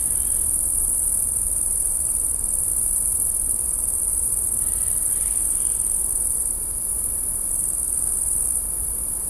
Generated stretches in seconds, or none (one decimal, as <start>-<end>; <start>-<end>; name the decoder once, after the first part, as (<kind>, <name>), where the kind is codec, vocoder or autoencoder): none